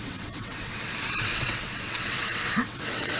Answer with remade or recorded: remade